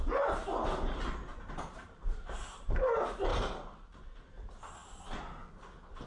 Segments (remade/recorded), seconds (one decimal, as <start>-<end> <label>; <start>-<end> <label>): 0.0-1.3 recorded; 1.3-2.8 remade; 2.8-3.3 recorded; 3.3-4.0 remade; 4.0-6.1 recorded